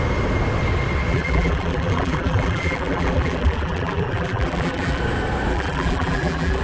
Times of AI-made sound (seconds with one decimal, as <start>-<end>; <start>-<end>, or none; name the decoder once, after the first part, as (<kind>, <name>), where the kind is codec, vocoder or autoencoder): 1.1-5.0 (vocoder, BigVGAN v2); 5.5-6.6

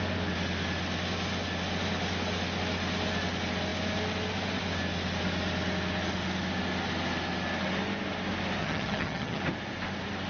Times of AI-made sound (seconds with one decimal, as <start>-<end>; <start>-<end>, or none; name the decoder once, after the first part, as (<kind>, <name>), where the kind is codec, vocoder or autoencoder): 8.6-9.4 (vocoder, HiFi-GAN)

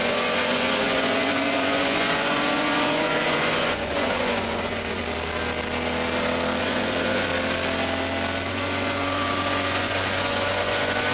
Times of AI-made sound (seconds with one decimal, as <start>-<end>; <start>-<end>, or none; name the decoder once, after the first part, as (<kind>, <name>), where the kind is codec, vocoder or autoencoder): 0.0-5.0 (vocoder, Vocos); 6.6-7.3; 8.5-11.1

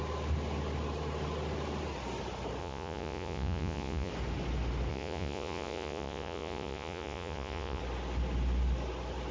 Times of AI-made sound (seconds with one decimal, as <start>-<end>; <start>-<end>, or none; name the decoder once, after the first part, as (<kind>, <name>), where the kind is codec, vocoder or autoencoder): 2.6-4.1 (vocoder, Vocos); 4.9-7.8

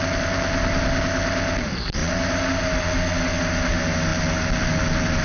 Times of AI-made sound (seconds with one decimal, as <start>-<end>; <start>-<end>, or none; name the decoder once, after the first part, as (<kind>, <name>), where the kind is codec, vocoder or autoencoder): none

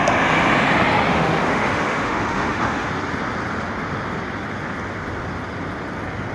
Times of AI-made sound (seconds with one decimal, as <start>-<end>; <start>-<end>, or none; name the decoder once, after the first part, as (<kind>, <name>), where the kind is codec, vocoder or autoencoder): 1.1-2.9 (autoencoder, DAC-VAE)

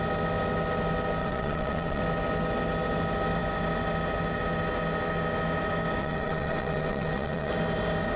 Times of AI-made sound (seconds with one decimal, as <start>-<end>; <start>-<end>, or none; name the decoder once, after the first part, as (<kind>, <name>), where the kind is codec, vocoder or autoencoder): 1.2-2.0 (vocoder, WaveNeXt); 6.0-7.5

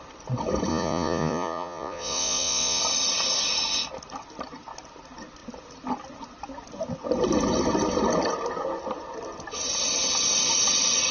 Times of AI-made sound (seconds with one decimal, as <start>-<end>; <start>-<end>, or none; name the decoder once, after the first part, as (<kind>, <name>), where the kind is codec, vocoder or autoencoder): 0.7-2.8 (vocoder, Vocos)